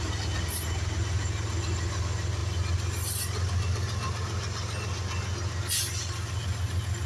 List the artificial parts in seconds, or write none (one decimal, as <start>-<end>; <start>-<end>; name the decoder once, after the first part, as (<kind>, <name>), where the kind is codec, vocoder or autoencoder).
none